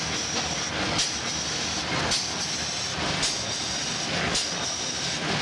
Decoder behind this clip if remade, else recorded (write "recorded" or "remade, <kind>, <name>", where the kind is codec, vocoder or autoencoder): recorded